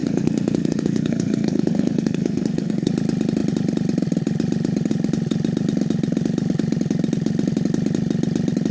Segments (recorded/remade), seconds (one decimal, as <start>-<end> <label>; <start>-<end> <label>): 0.0-2.9 remade; 2.9-8.7 recorded